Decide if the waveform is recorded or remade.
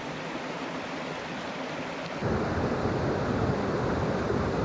recorded